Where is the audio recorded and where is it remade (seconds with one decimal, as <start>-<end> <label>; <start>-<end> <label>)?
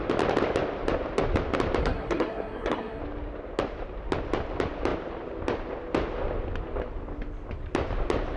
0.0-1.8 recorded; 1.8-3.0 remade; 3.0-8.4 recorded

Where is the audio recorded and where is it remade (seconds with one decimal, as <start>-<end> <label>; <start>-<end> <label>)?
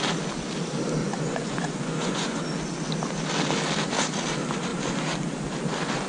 0.0-1.0 recorded; 1.0-2.4 remade; 2.4-6.1 recorded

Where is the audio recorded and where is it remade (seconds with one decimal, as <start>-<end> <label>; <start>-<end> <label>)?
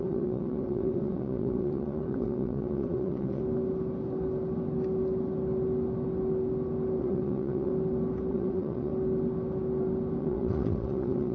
0.0-3.4 remade; 3.4-7.0 recorded; 7.0-7.7 remade; 7.7-8.3 recorded; 8.3-8.9 remade; 8.9-10.2 recorded; 10.2-11.3 remade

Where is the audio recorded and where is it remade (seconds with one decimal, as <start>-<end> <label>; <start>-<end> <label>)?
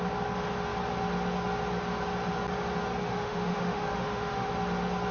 0.0-3.0 recorded; 3.0-4.5 remade; 4.5-5.1 recorded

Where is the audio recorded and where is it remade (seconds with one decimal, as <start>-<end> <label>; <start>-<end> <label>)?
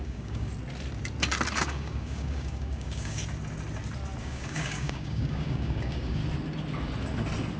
0.0-0.5 remade; 0.5-1.6 recorded; 1.6-3.2 remade; 3.2-4.2 recorded; 4.2-6.2 remade; 6.2-7.6 recorded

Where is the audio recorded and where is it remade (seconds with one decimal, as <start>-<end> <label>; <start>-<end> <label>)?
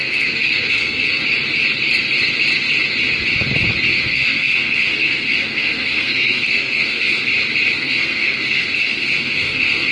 0.0-1.2 remade; 1.2-3.9 recorded; 3.9-7.2 remade; 7.2-7.7 recorded; 7.7-9.9 remade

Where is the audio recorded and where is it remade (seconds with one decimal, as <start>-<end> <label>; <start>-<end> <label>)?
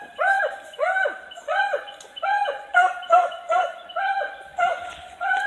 0.0-0.8 remade; 0.8-1.4 recorded; 1.4-5.5 remade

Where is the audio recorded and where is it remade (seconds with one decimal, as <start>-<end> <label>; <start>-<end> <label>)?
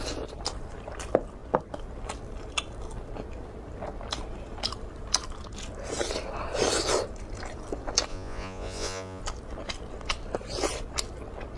0.0-8.1 recorded; 8.1-9.2 remade; 9.2-11.6 recorded